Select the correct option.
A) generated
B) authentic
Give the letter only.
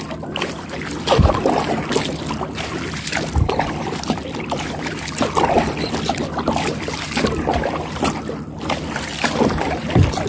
A